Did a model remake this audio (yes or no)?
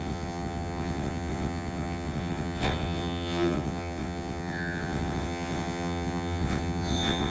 yes